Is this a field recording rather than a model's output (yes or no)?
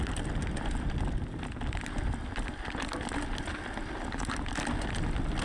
yes